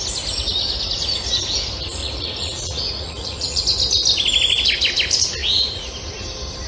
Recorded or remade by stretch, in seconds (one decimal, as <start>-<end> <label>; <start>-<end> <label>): 0.0-2.0 recorded; 2.0-3.6 remade; 3.6-5.4 recorded; 5.4-5.9 remade; 5.9-6.7 recorded